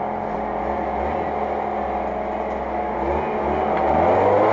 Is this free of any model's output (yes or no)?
yes